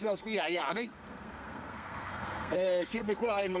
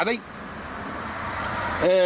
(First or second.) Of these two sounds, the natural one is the second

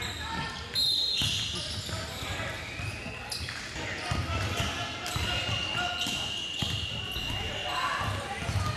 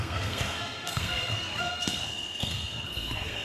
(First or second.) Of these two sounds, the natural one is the first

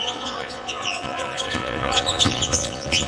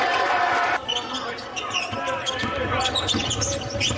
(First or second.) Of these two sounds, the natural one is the second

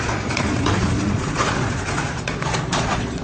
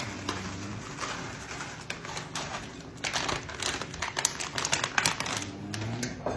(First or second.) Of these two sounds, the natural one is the second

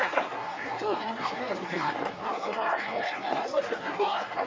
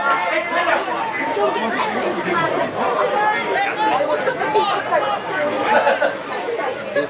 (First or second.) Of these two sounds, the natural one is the second